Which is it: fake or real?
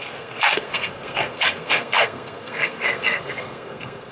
fake